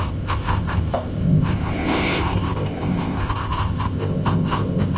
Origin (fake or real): fake